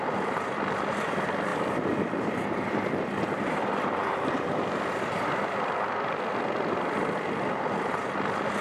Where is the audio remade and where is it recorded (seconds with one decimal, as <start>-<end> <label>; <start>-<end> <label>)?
0.0-8.6 remade